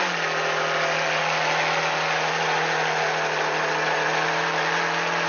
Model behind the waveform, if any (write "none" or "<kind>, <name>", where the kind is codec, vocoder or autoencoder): none